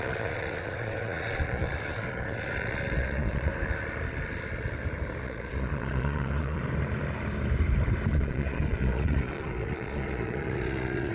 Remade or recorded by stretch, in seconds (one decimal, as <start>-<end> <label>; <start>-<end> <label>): 0.0-3.5 remade; 3.5-5.2 recorded; 5.2-6.6 remade; 6.6-8.1 recorded; 8.1-11.1 remade